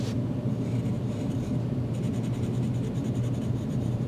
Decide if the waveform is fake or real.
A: fake